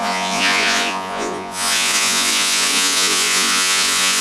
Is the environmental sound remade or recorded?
remade